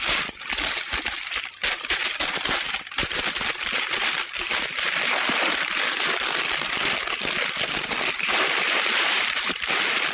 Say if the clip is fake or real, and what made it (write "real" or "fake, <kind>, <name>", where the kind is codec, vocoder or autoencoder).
real